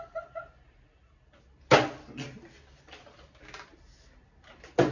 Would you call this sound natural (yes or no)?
yes